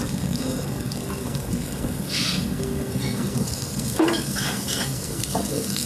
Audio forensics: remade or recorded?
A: remade